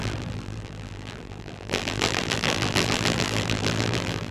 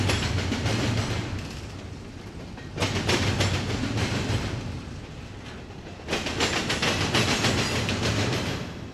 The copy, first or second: first